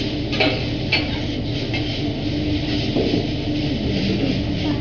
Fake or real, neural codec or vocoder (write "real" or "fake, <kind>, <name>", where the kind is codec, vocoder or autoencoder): real